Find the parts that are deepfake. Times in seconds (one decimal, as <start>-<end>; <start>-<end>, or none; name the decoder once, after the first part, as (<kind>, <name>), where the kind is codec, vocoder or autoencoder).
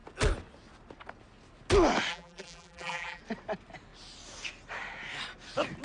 2.1-3.2 (vocoder, BigVGAN v2)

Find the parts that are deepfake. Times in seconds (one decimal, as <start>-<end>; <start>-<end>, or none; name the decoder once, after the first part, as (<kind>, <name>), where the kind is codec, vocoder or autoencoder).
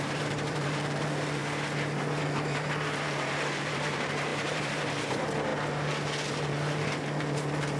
0.0-1.4 (vocoder, BigVGAN v2); 2.2-5.5; 6.3-7.8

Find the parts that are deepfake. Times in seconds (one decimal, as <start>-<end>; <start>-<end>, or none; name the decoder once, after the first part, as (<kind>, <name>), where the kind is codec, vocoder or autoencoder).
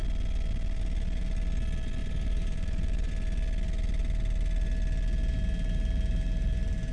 2.0-3.1 (vocoder, BigVGAN v2)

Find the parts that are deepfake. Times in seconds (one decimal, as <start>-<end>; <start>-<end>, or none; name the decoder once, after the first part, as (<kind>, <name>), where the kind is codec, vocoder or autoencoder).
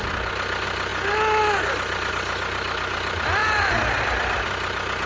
none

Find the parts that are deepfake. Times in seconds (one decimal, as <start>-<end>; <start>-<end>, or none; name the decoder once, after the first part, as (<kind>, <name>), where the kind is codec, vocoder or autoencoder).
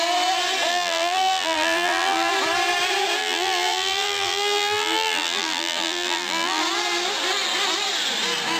0.7-2.3 (vocoder, BigVGAN v2); 3.2-6.6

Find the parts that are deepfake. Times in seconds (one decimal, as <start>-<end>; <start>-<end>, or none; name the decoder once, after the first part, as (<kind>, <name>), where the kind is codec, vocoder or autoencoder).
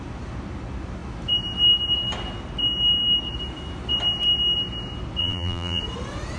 5.2-5.8 (vocoder, BigVGAN v2)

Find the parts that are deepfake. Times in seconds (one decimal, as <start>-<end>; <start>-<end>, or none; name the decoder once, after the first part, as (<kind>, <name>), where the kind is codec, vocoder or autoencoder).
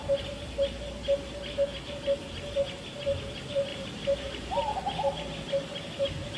3.7-4.6 (vocoder, BigVGAN v2)